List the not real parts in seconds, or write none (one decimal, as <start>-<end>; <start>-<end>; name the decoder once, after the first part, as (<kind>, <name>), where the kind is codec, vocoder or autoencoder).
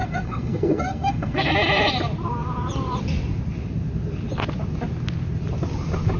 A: 0.0-1.5 (codec, SNAC)